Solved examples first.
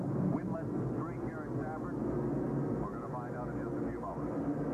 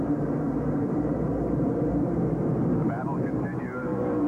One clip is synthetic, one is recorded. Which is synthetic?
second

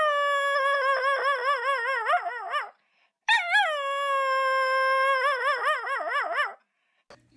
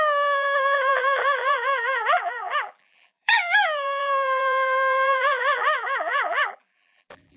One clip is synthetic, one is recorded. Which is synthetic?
second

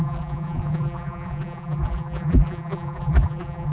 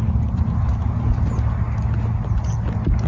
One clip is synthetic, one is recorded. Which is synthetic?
first